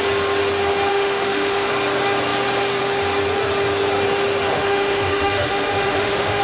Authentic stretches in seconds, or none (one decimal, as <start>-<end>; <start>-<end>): 0.0-0.9; 1.7-4.5